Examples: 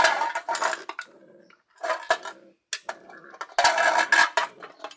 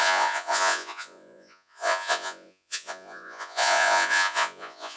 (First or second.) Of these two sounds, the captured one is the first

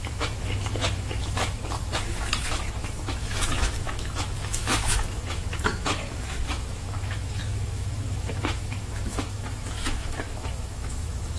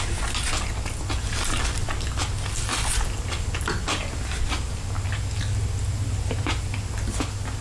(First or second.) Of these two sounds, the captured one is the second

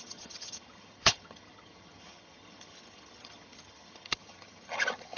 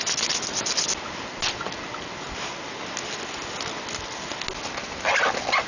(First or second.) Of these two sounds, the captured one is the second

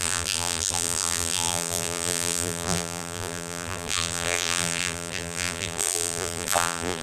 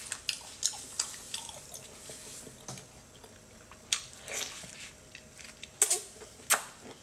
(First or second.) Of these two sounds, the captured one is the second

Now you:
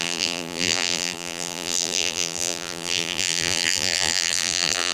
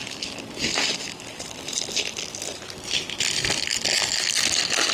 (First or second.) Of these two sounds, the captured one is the second